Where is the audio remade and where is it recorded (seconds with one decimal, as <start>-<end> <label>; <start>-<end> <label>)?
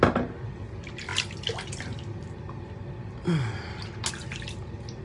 0.0-5.0 recorded